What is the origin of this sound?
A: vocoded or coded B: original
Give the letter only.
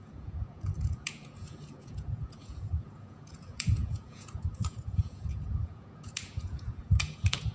A